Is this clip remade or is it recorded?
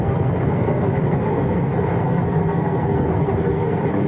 remade